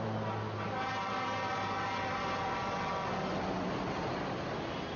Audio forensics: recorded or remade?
recorded